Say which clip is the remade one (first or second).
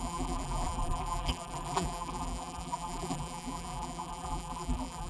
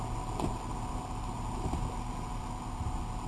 first